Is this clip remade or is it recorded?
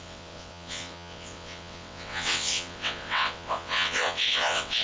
remade